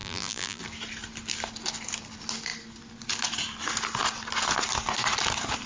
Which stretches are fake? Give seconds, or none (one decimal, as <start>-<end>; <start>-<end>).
0.0-0.6